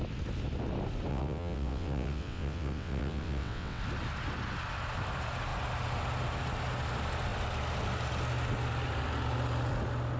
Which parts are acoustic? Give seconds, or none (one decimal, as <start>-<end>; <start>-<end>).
0.0-1.1; 3.8-10.2